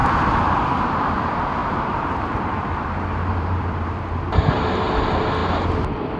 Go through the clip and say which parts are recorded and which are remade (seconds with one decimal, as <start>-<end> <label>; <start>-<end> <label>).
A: 0.0-0.7 remade; 0.7-1.6 recorded; 1.6-4.6 remade; 4.6-6.2 recorded